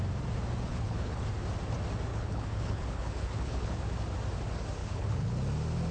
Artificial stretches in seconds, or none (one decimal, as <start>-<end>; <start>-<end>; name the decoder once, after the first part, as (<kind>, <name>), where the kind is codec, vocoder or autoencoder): 0.7-1.3 (codec, HILCodec); 2.1-3.8; 4.8-5.4